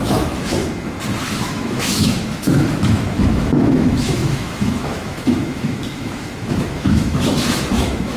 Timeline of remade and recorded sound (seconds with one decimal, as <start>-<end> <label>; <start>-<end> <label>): 0.0-0.6 remade; 0.6-1.4 recorded; 1.4-8.2 remade